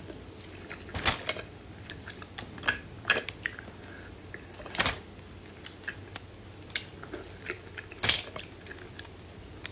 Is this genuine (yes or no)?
yes